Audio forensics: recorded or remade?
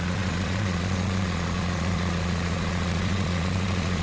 remade